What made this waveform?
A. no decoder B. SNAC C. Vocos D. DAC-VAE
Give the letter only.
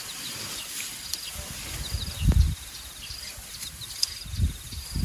A